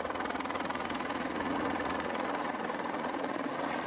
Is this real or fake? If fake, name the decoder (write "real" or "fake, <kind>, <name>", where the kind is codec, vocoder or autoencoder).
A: fake, vocoder, Vocos